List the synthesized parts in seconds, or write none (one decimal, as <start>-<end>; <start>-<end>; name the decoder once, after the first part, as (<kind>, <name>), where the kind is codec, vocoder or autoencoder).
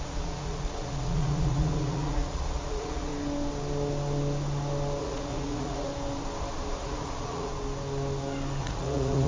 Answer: 0.0-3.1 (vocoder, Vocos); 5.0-5.9; 6.7-7.5; 8.6-9.3